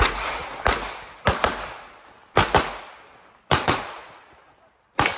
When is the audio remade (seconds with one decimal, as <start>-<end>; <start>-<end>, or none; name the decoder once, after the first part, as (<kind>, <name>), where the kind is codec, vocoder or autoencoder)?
0.0-0.4 (vocoder, Vocos); 3.5-4.4